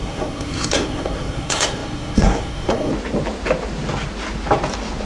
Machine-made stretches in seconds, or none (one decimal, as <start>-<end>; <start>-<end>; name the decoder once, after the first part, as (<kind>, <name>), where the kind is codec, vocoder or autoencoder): 0.0-2.9 (codec, SNAC)